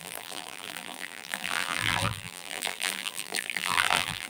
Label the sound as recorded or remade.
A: remade